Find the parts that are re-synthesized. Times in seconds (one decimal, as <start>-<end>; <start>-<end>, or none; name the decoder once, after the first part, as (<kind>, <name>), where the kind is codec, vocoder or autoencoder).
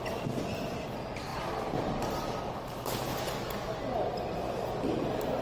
none